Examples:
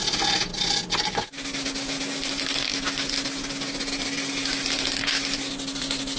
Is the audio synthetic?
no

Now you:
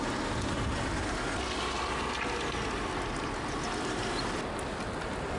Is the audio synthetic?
no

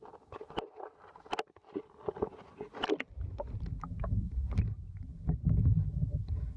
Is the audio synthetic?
no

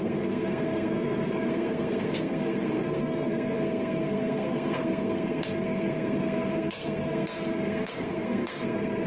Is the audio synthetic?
yes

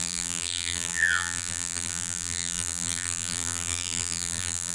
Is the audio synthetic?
yes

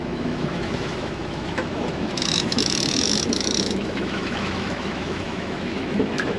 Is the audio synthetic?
yes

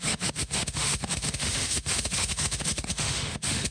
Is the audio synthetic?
yes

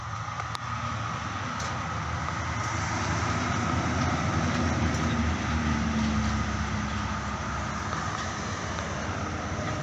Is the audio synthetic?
no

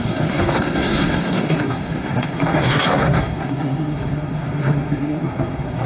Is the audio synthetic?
yes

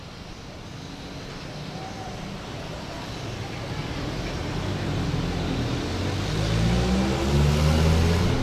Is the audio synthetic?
no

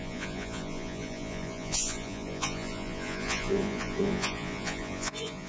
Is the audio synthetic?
yes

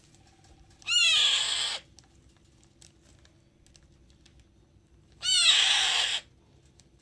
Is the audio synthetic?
no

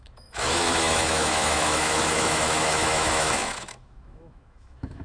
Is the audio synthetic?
yes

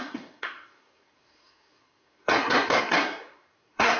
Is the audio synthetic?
yes